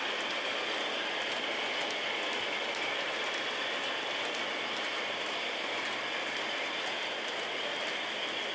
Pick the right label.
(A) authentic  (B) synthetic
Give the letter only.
A